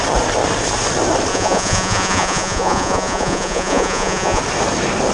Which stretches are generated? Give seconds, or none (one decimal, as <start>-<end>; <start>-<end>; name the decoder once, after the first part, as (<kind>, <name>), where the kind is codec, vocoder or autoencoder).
1.3-4.4 (vocoder, Vocos)